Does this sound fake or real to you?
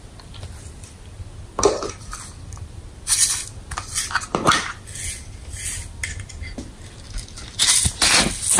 real